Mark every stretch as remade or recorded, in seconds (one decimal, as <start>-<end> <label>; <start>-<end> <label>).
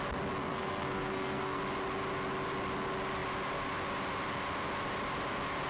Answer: 0.0-0.4 recorded; 0.4-1.6 remade; 1.6-5.7 recorded